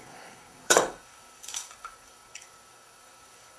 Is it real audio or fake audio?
fake